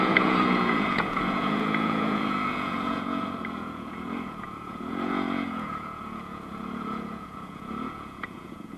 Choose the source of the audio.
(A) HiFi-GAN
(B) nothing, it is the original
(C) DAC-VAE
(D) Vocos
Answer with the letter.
D